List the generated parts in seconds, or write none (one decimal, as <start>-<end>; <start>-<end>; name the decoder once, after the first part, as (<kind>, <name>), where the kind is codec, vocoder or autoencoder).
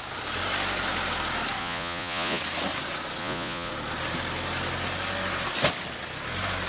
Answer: 1.6-2.4 (vocoder, Vocos); 3.2-3.7